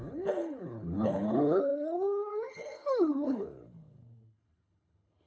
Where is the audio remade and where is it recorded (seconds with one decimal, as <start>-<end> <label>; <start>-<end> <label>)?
0.0-5.3 remade